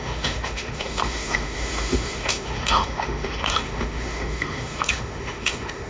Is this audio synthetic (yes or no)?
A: yes